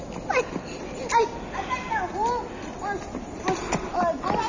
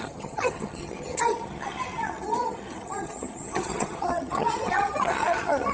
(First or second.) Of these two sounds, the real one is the first